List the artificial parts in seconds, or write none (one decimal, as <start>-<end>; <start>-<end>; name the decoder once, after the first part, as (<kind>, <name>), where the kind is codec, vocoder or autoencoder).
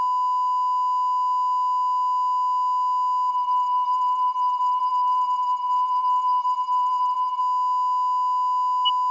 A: 3.3-7.4 (vocoder, BigVGAN v2)